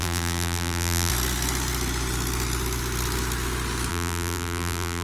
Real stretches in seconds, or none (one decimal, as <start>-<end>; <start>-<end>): 1.1-3.9